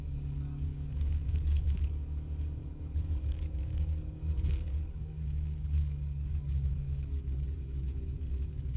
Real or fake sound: fake